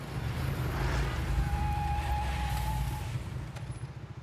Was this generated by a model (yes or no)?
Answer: no